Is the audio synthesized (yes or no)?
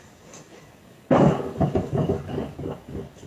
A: yes